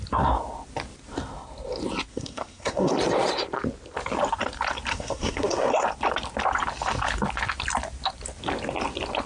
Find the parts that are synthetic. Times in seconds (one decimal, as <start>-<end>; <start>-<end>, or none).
2.1-2.9; 4.9-5.7